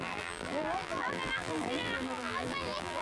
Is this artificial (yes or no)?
yes